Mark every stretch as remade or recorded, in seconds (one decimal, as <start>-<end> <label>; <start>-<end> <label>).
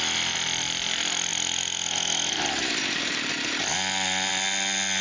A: 0.0-5.0 recorded